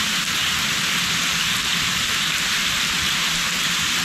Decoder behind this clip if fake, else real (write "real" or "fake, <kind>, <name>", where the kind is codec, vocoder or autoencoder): real